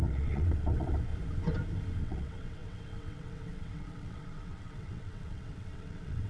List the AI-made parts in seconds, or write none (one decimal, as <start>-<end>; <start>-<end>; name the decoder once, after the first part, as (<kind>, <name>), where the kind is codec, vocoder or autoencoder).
0.0-1.1 (vocoder, WaveNeXt); 2.0-6.3